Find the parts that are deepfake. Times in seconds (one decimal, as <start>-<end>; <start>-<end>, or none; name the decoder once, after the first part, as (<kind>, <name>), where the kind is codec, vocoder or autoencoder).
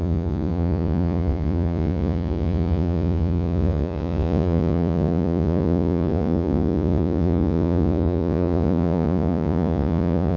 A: 0.0-10.4 (vocoder, Vocos)